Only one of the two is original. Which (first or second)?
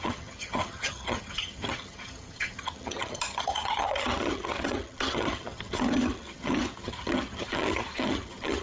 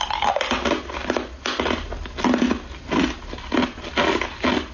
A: second